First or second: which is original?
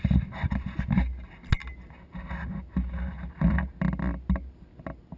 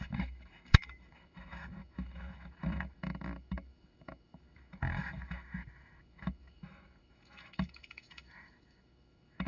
first